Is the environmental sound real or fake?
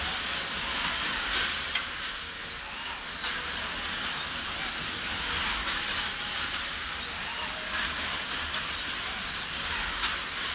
real